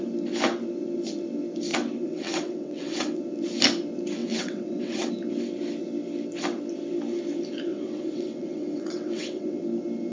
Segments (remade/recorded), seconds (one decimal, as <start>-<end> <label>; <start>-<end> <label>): 0.0-1.7 recorded; 1.7-3.2 remade; 3.2-4.2 recorded; 4.2-5.1 remade; 5.1-7.7 recorded; 7.7-9.6 remade; 9.6-10.1 recorded